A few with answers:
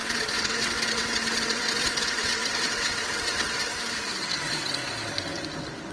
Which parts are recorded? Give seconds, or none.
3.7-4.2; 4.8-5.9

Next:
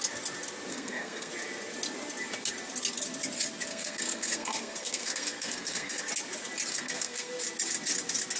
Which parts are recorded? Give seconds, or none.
0.0-0.7; 1.3-3.7; 6.0-6.7; 7.3-8.4

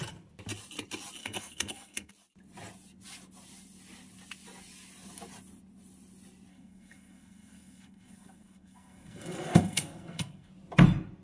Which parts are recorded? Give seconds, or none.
0.0-1.2; 2.1-6.5; 10.5-11.2